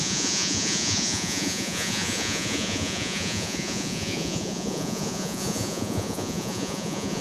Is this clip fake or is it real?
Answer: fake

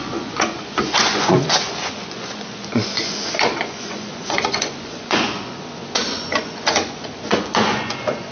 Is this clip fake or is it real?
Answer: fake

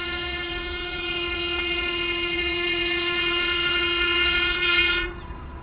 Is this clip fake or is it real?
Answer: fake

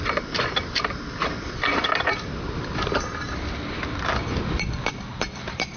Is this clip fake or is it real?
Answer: fake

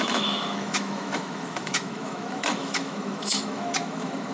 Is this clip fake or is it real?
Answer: fake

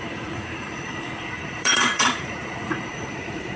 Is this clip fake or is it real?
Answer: fake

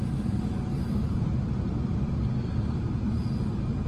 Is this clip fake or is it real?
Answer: real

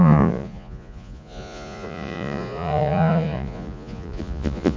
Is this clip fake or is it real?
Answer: fake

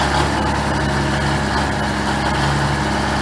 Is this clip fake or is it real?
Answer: real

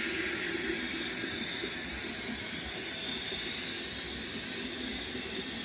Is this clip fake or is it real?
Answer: real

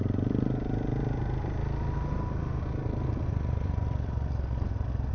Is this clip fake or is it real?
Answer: real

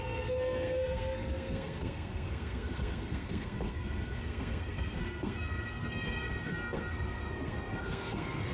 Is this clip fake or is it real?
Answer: fake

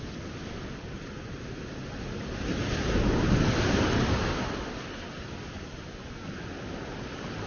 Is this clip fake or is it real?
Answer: real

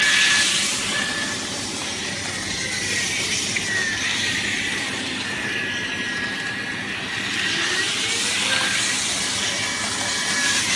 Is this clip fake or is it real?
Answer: fake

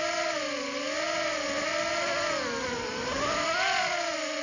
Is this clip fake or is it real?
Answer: real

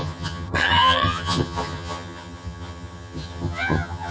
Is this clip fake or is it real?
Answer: fake